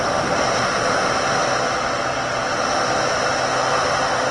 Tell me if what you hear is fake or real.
real